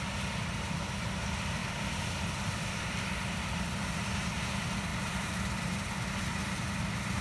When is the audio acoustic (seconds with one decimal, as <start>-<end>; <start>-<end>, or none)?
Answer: 0.0-1.6; 4.4-4.9; 6.2-7.2